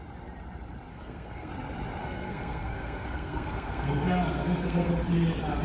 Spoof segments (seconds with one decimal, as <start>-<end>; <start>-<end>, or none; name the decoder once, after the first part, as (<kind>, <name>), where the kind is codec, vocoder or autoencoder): 0.9-1.5 (codec, SNAC); 2.0-4.9